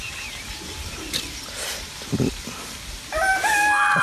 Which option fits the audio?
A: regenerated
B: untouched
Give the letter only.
B